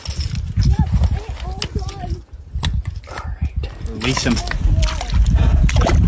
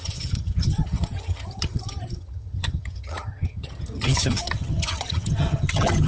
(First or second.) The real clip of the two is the first